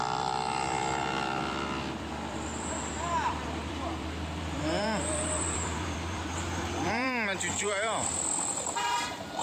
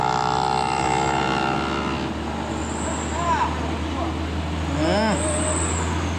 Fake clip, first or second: first